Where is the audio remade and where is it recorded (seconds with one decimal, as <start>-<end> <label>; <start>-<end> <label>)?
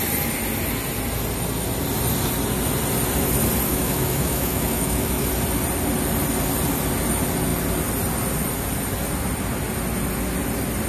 0.0-3.7 recorded; 3.7-5.3 remade; 5.3-10.9 recorded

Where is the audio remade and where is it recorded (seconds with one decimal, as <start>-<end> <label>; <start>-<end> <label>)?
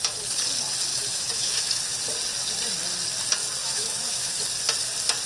0.0-0.9 recorded; 0.9-1.8 remade; 1.8-3.6 recorded; 3.6-4.4 remade; 4.4-5.3 recorded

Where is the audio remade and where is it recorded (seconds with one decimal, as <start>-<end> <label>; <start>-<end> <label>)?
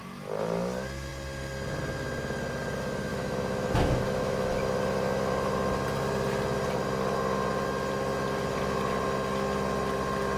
0.0-3.1 recorded; 3.1-4.5 remade; 4.5-10.4 recorded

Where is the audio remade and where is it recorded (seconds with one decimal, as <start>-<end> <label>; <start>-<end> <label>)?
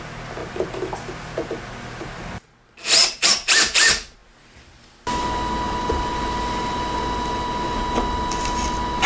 0.0-9.1 recorded